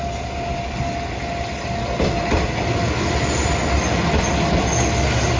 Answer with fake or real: real